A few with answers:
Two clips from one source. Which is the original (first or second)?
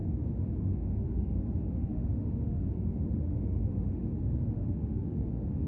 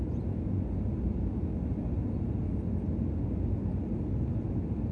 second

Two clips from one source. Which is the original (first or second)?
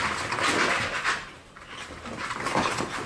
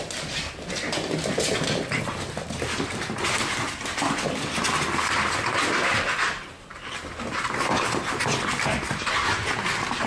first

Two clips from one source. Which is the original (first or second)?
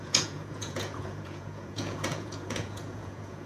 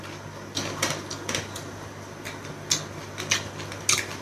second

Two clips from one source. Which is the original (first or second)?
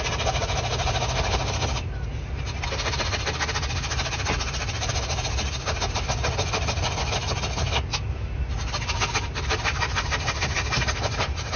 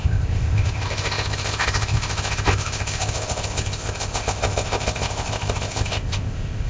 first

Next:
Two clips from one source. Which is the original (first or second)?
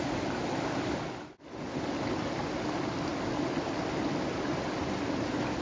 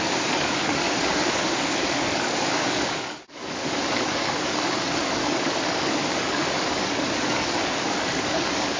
first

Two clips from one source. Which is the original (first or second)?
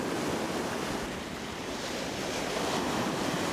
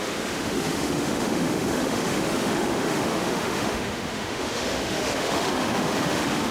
first